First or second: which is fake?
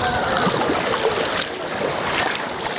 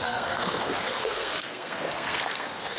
second